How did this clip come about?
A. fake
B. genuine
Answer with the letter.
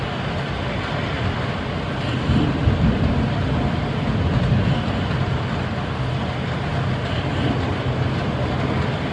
B